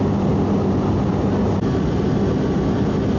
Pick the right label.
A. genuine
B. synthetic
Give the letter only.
A